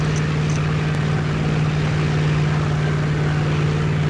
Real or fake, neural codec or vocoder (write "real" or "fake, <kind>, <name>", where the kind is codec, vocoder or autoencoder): real